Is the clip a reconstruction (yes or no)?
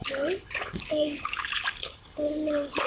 yes